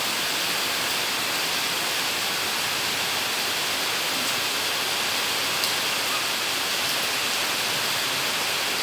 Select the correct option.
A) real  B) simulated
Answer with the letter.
A